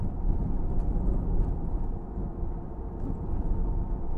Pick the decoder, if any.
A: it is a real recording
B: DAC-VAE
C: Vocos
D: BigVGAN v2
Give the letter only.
A